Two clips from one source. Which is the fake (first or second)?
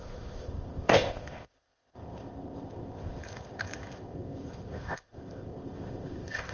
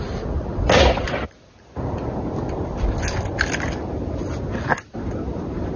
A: first